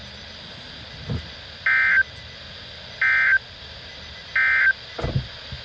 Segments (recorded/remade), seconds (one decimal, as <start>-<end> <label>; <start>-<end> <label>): 0.0-5.6 recorded